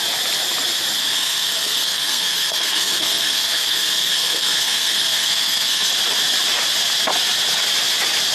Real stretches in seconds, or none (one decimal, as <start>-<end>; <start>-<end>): 0.0-1.0; 5.9-8.3